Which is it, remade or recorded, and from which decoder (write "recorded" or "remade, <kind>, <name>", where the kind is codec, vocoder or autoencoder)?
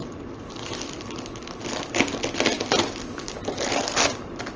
recorded